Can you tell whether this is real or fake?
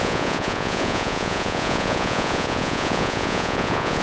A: fake